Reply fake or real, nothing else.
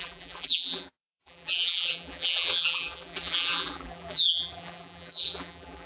fake